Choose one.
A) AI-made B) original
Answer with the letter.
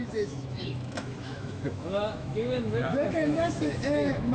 A